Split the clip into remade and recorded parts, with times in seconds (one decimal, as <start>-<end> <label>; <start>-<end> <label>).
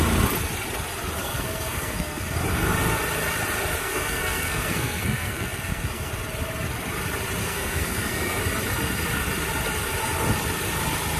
0.0-1.2 recorded; 1.2-2.2 remade; 2.2-3.8 recorded; 3.8-6.1 remade; 6.1-7.4 recorded; 7.4-8.4 remade; 8.4-11.2 recorded